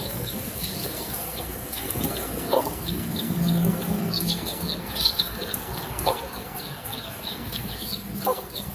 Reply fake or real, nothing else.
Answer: fake